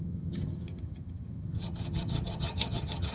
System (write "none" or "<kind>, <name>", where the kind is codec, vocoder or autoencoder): vocoder, HiFi-GAN